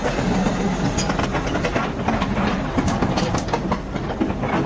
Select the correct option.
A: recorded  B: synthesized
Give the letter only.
A